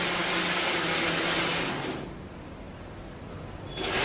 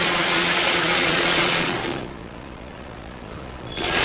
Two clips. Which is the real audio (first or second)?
first